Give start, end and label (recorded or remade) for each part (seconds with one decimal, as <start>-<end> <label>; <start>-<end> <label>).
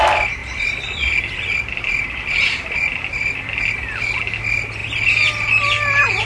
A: 0.0-6.3 recorded